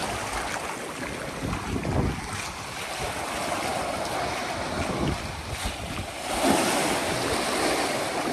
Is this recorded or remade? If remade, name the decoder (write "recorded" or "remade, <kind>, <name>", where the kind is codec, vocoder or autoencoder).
recorded